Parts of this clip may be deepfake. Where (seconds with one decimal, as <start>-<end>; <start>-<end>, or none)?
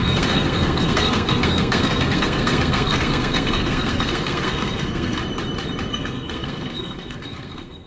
0.0-5.2; 5.9-7.9